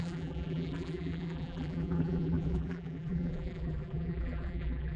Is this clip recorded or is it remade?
remade